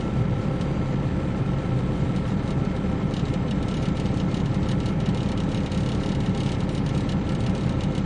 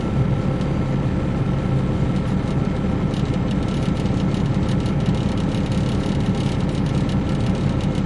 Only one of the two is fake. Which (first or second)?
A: first